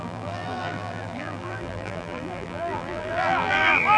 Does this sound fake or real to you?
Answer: fake